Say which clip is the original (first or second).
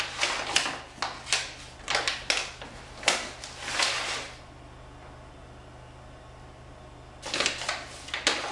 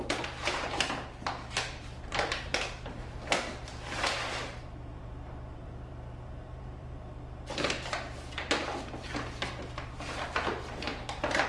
first